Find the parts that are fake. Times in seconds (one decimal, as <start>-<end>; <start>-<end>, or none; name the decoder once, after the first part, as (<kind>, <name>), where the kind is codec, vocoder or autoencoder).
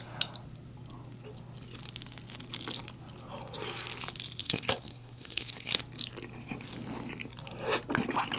4.4-5.8 (codec, SNAC)